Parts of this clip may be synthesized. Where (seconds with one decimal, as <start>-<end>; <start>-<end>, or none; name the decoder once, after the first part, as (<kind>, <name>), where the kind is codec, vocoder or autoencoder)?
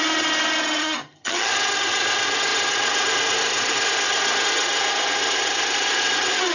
0.8-1.5 (vocoder, HiFi-GAN)